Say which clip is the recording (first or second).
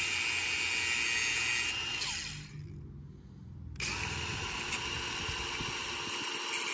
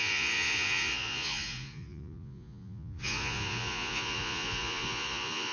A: first